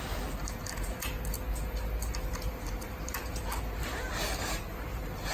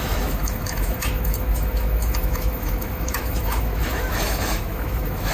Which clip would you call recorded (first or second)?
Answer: first